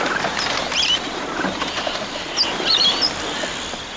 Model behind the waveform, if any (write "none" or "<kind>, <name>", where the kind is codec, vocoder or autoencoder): none